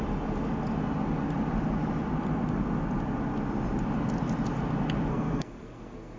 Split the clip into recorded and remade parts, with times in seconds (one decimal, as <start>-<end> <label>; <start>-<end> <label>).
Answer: 0.0-5.1 recorded; 5.1-6.2 remade